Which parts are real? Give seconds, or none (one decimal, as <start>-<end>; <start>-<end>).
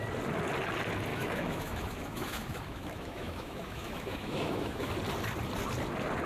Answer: 0.0-1.1; 4.9-6.3